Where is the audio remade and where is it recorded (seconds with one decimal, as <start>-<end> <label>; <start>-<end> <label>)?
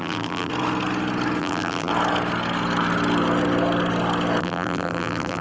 0.0-0.5 remade; 0.5-1.4 recorded; 1.4-1.9 remade; 1.9-4.4 recorded; 4.4-5.4 remade